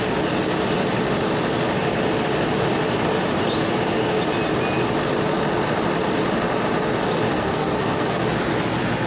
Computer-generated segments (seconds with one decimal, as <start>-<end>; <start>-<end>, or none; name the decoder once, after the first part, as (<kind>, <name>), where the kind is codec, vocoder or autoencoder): 7.3-8.2 (codec, SNAC)